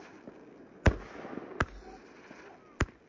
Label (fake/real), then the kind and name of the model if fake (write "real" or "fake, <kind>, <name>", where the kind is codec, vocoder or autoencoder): real